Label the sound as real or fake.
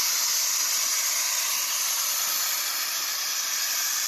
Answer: fake